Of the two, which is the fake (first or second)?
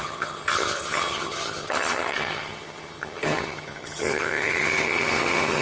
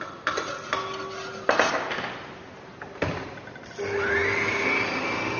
first